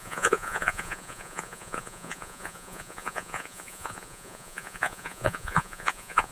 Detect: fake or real fake